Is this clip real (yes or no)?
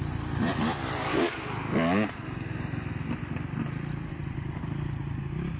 yes